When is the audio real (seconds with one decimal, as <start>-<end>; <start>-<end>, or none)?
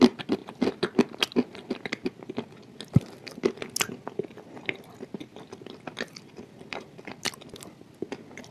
0.0-8.5